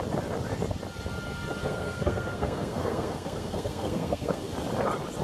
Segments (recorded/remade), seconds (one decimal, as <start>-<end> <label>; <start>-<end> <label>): 0.0-1.6 recorded; 1.6-4.5 remade; 4.5-5.2 recorded